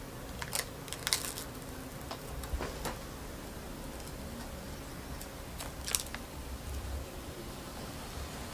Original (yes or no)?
yes